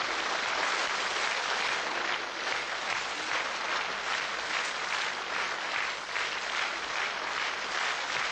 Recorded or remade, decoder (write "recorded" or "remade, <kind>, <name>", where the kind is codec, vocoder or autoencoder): recorded